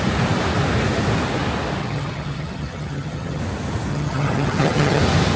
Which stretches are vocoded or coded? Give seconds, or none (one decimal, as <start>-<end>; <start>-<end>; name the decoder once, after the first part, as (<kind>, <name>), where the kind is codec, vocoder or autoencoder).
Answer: 1.8-3.4 (vocoder, HiFi-GAN); 3.9-5.0

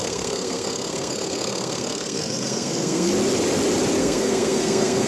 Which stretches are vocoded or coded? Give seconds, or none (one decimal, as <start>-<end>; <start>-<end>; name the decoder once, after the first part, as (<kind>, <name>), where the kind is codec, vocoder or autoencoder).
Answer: 0.0-3.1 (codec, SNAC); 4.0-5.1